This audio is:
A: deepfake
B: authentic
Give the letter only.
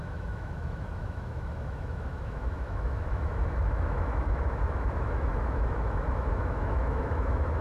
A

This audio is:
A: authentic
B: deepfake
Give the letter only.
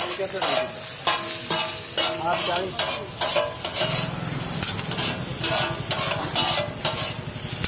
A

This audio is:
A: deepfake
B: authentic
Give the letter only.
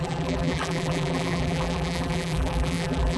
A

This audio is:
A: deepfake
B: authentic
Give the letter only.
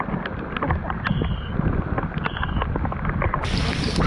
B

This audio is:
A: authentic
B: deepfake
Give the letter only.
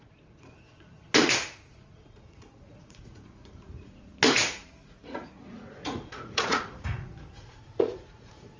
B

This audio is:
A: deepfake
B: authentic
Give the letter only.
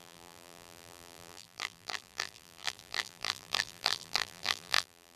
A